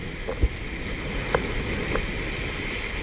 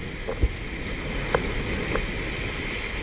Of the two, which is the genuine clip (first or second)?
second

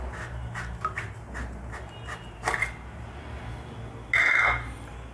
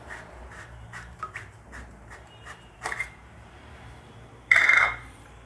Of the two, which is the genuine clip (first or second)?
first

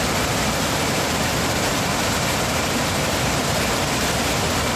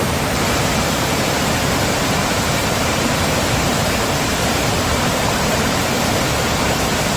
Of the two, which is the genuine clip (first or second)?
first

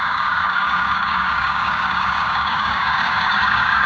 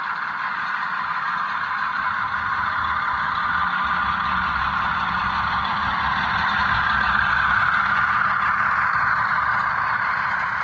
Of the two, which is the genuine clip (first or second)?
second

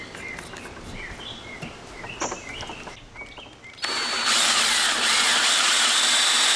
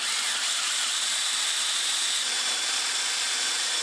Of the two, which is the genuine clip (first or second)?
first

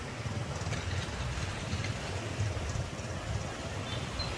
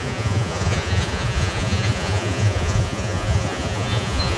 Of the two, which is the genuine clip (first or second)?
first